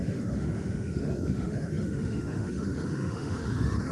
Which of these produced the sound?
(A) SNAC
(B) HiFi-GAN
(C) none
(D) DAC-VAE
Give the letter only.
D